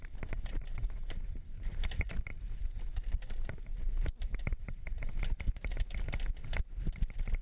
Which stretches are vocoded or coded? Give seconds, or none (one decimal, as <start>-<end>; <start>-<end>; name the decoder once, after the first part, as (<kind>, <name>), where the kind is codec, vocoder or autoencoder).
0.0-0.7 (vocoder, BigVGAN v2); 2.6-4.3; 6.6-7.4